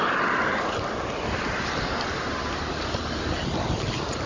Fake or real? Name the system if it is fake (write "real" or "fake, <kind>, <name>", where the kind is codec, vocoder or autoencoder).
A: real